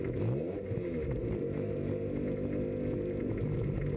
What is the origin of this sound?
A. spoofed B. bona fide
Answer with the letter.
B